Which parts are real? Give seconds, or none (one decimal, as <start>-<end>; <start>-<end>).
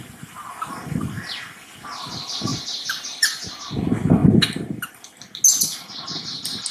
0.0-2.5; 3.7-6.7